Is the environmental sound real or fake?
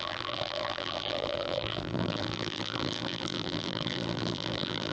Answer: fake